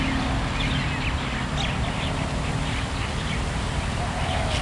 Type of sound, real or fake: real